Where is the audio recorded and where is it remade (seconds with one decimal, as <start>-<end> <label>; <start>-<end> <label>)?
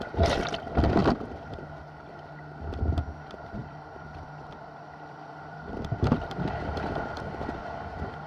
0.0-3.6 recorded; 3.6-6.9 remade; 6.9-8.3 recorded